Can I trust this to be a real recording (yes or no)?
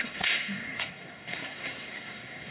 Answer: no